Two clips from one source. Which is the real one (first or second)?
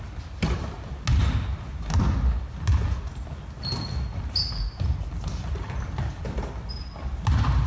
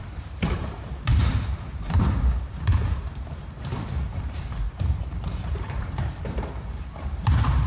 first